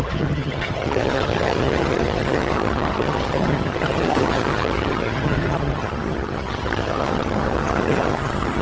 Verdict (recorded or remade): remade